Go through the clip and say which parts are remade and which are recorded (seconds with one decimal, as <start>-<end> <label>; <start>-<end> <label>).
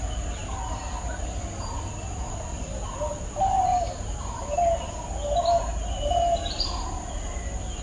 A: 0.0-7.8 recorded